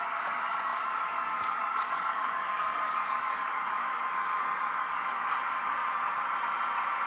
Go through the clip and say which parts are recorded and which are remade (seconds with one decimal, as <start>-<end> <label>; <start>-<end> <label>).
0.0-5.8 remade; 5.8-7.1 recorded